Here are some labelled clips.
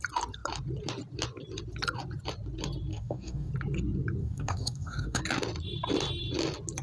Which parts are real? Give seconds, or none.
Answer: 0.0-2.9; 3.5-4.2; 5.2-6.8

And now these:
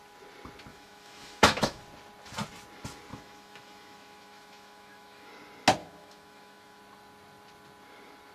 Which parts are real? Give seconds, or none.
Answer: 0.0-0.7; 1.8-3.1; 5.3-5.8; 6.8-8.3

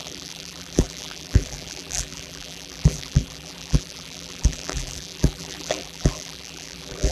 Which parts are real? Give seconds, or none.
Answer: none